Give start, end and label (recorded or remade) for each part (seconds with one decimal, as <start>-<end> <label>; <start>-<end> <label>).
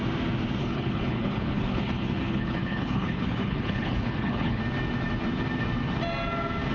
0.0-0.6 recorded; 0.6-4.6 remade; 4.6-6.7 recorded